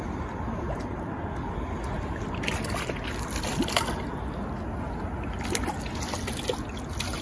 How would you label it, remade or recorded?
recorded